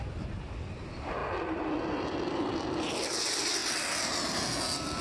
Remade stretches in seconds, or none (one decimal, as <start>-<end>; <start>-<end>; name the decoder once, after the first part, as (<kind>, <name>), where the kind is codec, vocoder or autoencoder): none